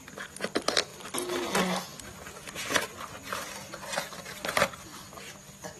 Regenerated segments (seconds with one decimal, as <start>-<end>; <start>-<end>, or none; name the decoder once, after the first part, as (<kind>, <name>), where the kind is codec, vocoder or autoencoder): 0.9-1.5 (vocoder, BigVGAN v2)